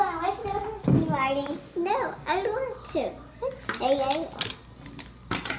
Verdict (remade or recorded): recorded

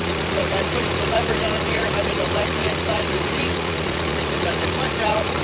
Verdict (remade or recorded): remade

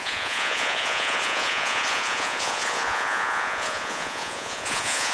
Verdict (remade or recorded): remade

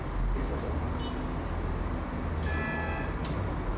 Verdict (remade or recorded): recorded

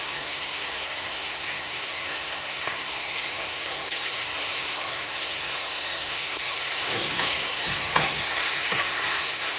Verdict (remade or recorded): remade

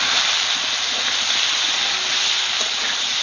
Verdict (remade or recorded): recorded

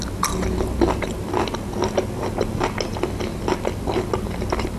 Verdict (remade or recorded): recorded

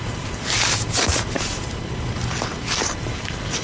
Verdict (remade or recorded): remade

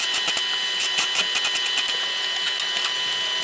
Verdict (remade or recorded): recorded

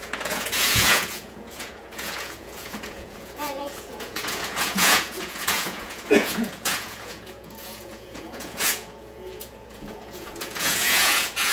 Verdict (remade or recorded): remade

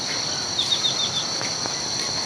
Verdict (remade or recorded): recorded